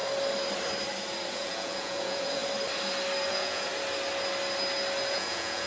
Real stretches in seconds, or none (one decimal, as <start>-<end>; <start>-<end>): 0.0-1.3; 2.4-3.3; 3.7-5.1

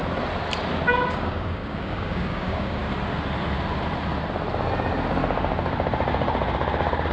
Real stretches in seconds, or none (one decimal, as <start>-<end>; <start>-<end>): 0.0-1.1; 2.8-7.1

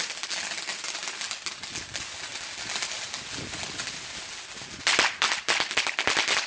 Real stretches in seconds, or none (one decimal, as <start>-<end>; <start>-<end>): 0.0-6.5

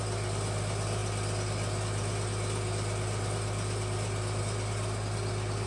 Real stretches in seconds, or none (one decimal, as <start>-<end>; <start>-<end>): 0.0-5.7

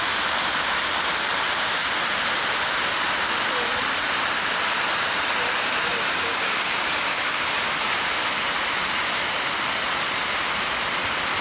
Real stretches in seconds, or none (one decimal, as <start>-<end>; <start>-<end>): 0.0-5.9; 7.4-11.4